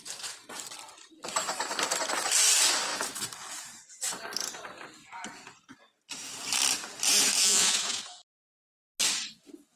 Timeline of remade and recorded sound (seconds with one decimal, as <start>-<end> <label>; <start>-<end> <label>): 0.0-7.4 recorded; 7.4-8.0 remade; 8.0-9.8 recorded